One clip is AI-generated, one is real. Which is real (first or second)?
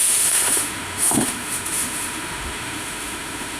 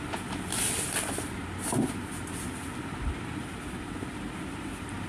second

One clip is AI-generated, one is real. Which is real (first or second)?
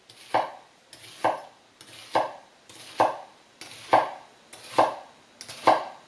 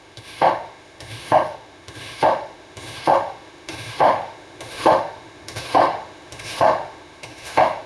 first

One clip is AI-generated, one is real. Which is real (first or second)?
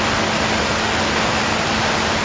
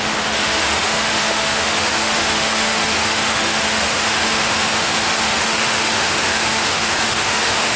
first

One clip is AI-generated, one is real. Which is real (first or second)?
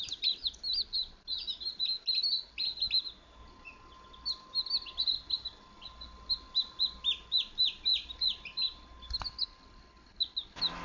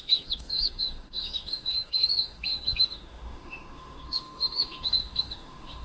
first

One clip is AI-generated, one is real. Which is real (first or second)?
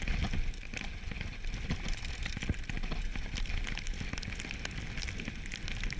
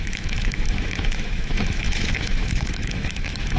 first